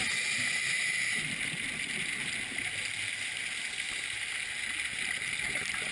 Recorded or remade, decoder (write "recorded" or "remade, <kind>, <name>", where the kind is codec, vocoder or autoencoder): recorded